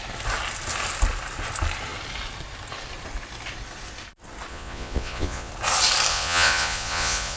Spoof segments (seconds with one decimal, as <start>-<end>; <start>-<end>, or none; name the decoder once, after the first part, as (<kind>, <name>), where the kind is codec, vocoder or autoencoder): 4.5-5.5 (vocoder, Vocos); 6.1-7.4